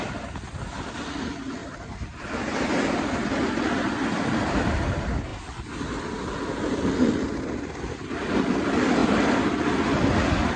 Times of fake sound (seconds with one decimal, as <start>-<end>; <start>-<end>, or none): 1.6-3.1